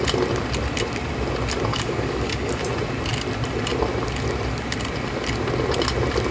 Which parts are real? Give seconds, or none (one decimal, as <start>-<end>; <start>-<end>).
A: 0.0-1.7; 2.6-6.3